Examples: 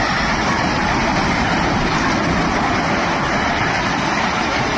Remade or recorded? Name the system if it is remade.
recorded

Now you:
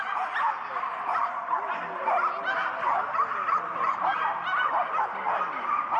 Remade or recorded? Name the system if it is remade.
recorded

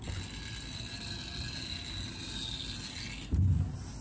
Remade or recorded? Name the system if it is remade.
recorded